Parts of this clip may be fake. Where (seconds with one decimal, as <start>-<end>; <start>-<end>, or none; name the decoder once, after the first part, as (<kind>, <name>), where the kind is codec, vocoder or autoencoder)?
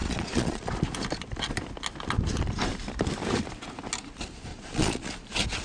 0.0-0.7 (vocoder, Vocos); 4.5-5.1